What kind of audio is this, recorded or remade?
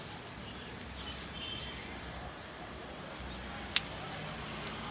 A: recorded